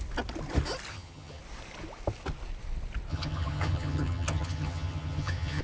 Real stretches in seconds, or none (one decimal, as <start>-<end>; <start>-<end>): 0.0-0.9; 1.4-3.1